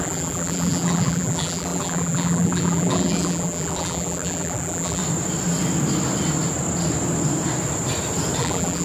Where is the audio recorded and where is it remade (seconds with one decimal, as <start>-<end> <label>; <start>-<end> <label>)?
0.0-5.0 remade; 5.0-8.4 recorded; 8.4-8.8 remade